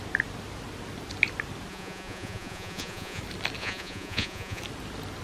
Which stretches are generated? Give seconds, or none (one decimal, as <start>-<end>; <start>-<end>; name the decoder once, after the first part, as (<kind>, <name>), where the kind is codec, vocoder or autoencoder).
1.7-3.2 (vocoder, Vocos); 3.6-4.6